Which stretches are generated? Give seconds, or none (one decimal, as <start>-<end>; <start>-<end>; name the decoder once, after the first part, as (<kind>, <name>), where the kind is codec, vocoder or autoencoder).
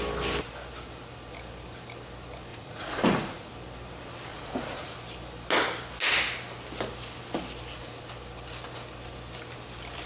2.5-3.5 (vocoder, Vocos); 4.3-4.9